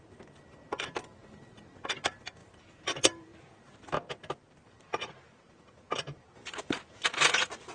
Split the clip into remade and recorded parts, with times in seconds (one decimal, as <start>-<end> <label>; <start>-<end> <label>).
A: 0.0-2.4 recorded; 2.4-6.6 remade; 6.6-7.7 recorded